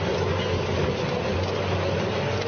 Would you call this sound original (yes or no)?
yes